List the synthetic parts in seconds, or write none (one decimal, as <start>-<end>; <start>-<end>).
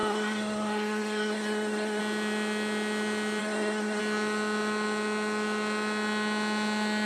0.0-2.0; 3.4-4.0